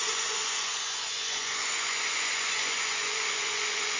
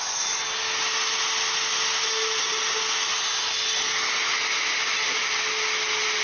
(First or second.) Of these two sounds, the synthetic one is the first